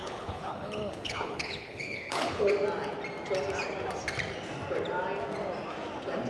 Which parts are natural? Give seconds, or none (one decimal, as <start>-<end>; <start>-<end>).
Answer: 2.5-6.3